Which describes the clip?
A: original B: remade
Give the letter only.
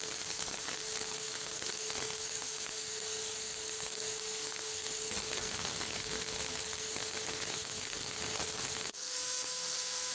B